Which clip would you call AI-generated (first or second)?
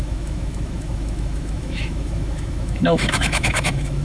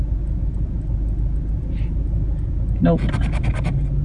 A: first